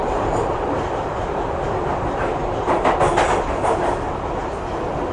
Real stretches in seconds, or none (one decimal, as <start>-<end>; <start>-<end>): 1.2-2.4; 3.0-5.1